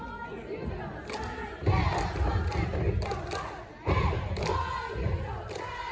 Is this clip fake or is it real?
real